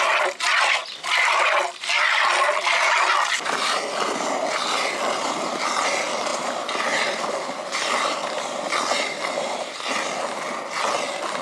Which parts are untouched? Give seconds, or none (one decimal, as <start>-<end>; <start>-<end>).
0.0-11.4